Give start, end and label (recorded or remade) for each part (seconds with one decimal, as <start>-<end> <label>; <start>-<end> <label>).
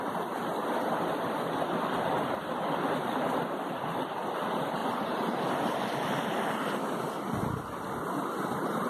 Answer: 0.0-8.9 recorded